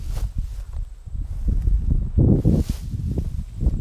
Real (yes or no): yes